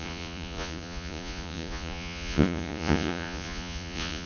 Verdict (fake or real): fake